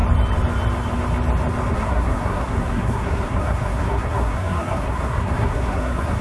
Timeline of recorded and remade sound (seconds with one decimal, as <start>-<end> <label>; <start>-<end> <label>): 0.0-1.7 recorded; 1.7-6.2 remade